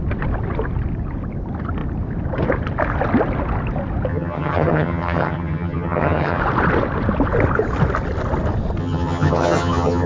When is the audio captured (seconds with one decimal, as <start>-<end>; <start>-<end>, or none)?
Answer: 0.0-4.1; 6.4-8.8